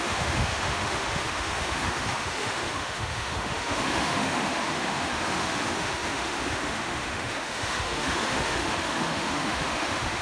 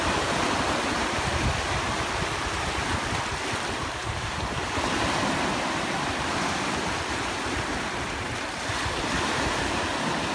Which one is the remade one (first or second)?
first